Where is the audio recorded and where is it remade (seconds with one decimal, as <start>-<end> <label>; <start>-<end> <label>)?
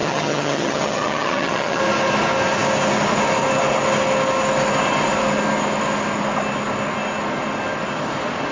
0.0-1.8 remade; 1.8-8.5 recorded